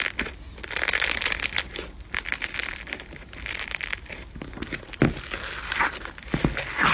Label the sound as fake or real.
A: real